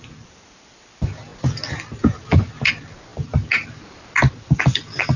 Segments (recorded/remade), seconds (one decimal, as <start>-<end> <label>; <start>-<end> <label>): 0.0-5.2 recorded